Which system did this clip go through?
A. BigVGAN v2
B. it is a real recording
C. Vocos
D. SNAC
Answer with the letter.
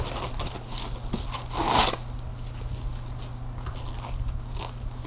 B